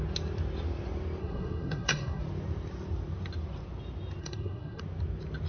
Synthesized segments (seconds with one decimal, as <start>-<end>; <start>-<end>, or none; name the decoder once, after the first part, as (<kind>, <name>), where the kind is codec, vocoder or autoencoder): 1.2-2.2 (codec, SNAC); 4.2-4.8